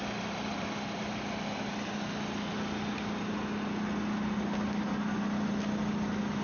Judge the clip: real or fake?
real